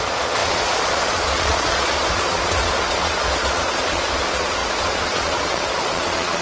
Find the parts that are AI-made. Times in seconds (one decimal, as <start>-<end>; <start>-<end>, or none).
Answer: 0.0-6.4